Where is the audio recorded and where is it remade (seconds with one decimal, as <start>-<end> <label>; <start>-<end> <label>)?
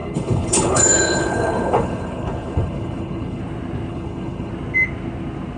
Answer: 0.0-3.4 remade; 3.4-3.9 recorded; 3.9-4.5 remade; 4.5-5.6 recorded